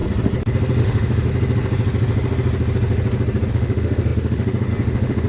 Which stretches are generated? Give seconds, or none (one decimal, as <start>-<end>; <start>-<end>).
0.8-1.3; 3.5-5.3